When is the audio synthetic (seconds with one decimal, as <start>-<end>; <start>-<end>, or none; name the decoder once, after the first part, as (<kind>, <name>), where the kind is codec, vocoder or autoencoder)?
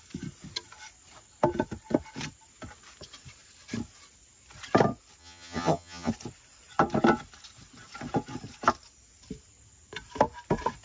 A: 5.2-6.1 (vocoder, HiFi-GAN)